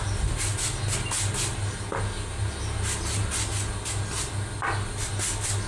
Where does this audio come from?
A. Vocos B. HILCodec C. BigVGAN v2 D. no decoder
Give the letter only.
D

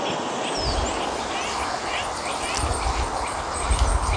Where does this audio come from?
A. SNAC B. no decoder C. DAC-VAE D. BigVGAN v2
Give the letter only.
B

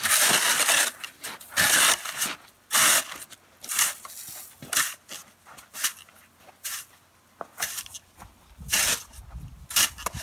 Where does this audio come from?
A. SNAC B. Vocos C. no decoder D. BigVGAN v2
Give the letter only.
C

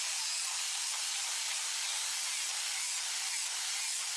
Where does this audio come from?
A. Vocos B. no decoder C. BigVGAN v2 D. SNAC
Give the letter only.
B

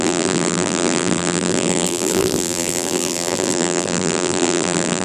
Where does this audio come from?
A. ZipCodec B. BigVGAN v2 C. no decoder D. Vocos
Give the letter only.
B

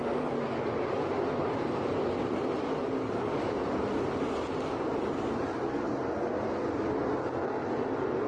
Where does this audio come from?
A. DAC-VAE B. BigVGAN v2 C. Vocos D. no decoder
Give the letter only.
D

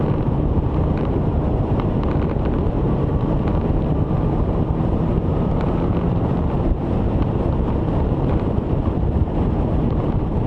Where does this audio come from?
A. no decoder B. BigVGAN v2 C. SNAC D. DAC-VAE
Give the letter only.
B